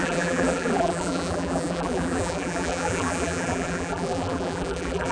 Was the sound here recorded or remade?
remade